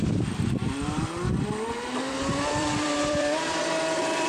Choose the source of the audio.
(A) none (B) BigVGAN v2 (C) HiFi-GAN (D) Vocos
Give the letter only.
B